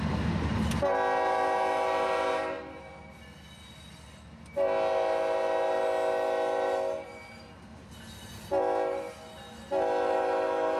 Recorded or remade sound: recorded